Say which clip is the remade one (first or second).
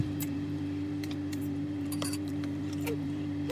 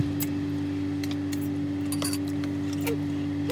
first